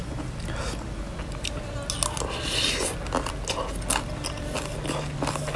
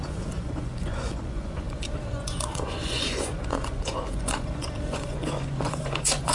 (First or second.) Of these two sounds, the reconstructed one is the second